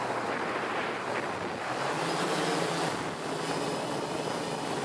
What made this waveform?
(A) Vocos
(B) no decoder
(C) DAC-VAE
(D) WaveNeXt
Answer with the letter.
B